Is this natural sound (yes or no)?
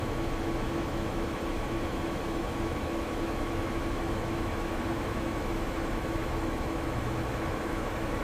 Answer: no